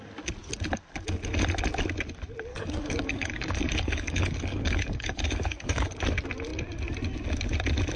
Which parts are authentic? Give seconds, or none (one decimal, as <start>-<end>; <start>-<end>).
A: 0.0-2.5; 6.0-8.0